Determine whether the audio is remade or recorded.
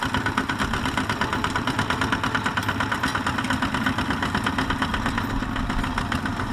recorded